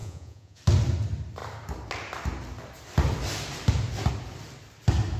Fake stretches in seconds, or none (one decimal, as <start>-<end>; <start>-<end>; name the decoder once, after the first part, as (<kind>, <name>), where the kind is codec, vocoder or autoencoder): 0.0-0.6 (vocoder, Vocos)